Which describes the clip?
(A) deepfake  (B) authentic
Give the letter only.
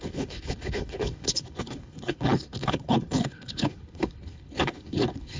A